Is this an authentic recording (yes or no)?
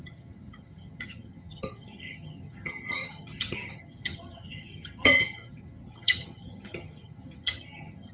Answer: no